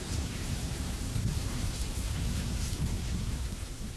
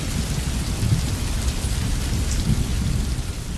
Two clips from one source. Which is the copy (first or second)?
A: first